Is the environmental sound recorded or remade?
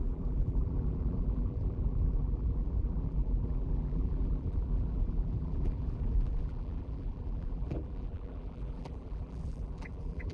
remade